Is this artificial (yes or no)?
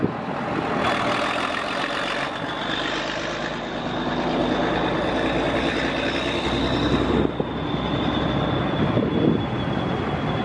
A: no